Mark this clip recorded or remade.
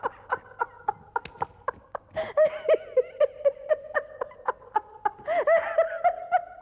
recorded